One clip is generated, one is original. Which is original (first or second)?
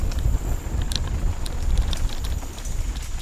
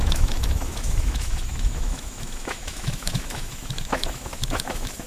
first